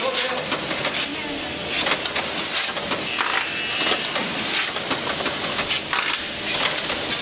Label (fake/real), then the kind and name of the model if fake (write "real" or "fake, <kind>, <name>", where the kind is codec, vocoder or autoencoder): real